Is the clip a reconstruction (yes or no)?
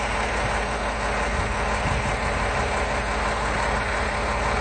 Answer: no